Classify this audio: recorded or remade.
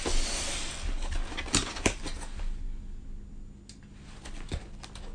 recorded